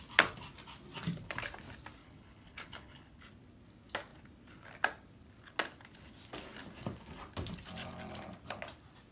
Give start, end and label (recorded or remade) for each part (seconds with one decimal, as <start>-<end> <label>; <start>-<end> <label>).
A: 0.0-2.0 recorded; 2.0-3.2 remade; 3.2-9.1 recorded